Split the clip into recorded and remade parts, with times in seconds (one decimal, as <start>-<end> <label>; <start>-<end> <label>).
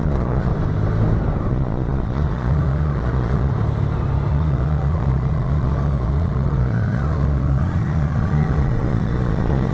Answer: 0.0-0.5 remade; 0.5-1.5 recorded; 1.5-3.5 remade; 3.5-4.3 recorded; 4.3-9.7 remade